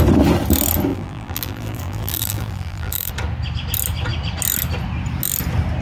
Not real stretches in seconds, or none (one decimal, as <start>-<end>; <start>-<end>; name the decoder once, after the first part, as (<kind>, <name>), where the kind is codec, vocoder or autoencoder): 0.9-3.1 (vocoder, BigVGAN v2)